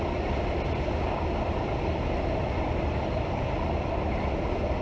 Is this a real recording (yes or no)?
yes